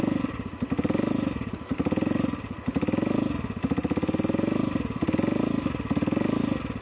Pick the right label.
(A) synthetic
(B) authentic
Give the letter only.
B